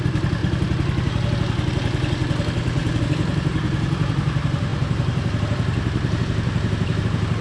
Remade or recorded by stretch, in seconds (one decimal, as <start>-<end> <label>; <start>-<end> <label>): 0.0-0.4 remade; 0.4-3.0 recorded; 3.0-7.4 remade